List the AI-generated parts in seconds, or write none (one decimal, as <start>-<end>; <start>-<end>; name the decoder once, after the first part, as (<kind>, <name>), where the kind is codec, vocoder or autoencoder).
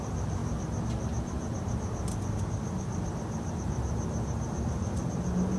none